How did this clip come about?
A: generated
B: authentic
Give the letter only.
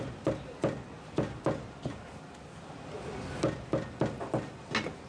B